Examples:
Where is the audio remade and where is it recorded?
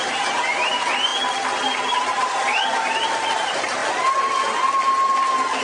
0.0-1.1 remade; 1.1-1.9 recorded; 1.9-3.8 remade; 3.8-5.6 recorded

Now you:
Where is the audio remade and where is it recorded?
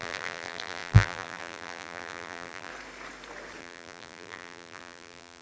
0.0-2.7 remade; 2.7-3.6 recorded; 3.6-5.4 remade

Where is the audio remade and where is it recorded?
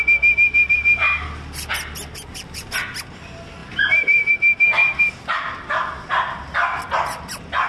0.0-3.6 recorded; 3.6-4.3 remade; 4.3-4.8 recorded; 4.8-5.5 remade; 5.5-7.7 recorded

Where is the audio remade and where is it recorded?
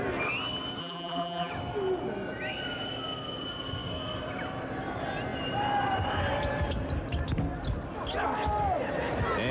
0.0-0.8 recorded; 0.8-1.5 remade; 1.5-9.5 recorded